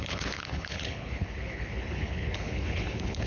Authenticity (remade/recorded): remade